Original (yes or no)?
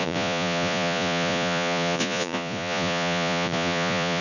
no